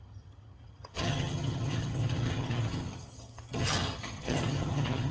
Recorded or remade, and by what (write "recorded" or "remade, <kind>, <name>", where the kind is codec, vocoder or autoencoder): remade, vocoder, HiFi-GAN